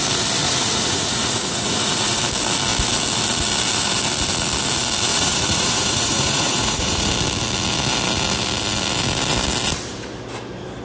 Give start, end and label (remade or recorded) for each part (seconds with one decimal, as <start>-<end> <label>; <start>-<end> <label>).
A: 0.0-0.4 recorded; 0.4-2.2 remade; 2.2-5.1 recorded; 5.1-7.1 remade; 7.1-10.8 recorded